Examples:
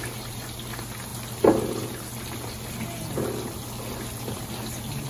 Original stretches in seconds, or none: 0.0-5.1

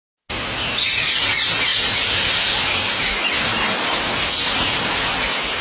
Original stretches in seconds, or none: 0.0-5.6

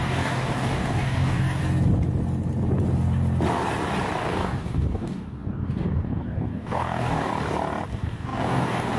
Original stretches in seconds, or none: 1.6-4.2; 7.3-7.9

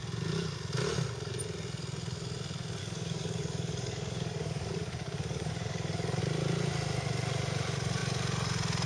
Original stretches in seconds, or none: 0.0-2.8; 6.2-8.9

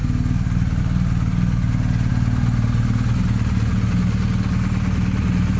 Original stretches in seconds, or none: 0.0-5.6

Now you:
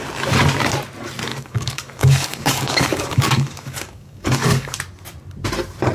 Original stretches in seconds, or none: 0.0-1.3; 4.8-5.9

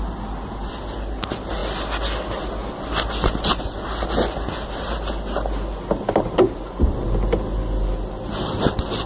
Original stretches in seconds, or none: 0.0-9.1

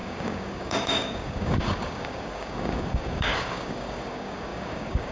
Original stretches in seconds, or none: none